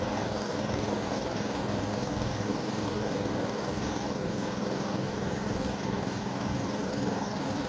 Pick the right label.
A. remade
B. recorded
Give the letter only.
A